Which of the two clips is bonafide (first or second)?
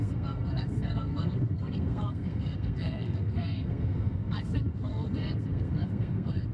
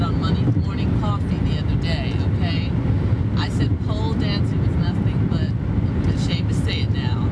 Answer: second